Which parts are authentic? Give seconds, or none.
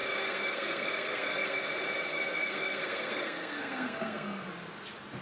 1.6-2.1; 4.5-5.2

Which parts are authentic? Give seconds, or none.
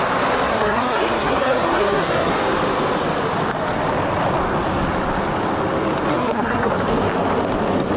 0.0-0.5; 2.3-6.1; 6.7-8.0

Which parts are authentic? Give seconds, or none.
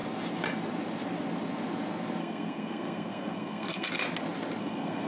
0.0-2.2; 3.9-4.6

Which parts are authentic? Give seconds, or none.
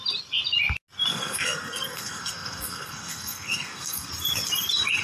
0.0-1.1; 4.1-5.0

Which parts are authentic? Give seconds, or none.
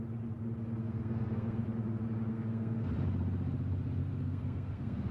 0.0-0.8; 1.6-2.3; 2.9-4.0